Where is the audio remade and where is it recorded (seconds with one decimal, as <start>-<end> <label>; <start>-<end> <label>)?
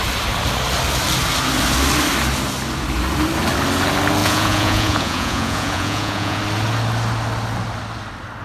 0.0-4.2 recorded; 4.2-6.4 remade; 6.4-8.4 recorded